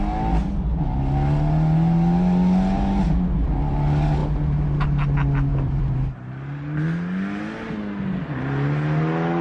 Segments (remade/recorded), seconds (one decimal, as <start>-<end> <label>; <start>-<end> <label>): 0.0-5.5 recorded; 5.5-6.1 remade; 6.1-9.4 recorded